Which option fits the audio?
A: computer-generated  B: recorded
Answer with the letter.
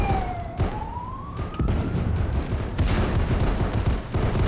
A